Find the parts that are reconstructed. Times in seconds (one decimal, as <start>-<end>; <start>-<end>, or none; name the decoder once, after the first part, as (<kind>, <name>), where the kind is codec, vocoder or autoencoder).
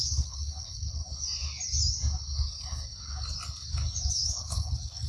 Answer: 0.0-1.0 (codec, HILCodec); 4.1-5.1